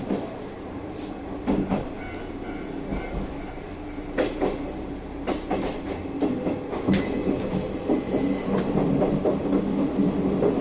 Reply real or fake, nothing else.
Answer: real